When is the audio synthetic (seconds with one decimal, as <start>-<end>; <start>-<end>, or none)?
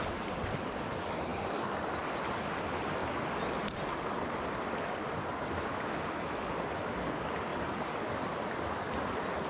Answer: none